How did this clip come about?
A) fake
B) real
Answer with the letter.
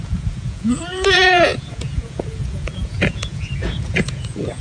A